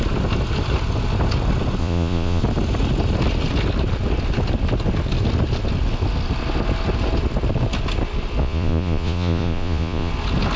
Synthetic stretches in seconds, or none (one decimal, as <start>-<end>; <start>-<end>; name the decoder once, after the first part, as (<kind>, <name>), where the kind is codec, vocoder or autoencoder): 1.8-2.4 (vocoder, Vocos); 8.4-10.1